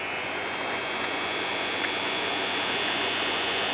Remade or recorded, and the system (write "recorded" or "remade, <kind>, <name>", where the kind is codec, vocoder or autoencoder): remade, vocoder, Vocos